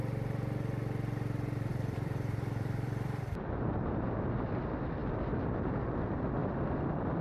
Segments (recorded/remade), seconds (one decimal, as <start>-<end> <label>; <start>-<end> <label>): 0.0-1.7 recorded; 1.7-3.2 remade; 3.2-5.0 recorded; 5.0-5.8 remade; 5.8-6.4 recorded; 6.4-7.2 remade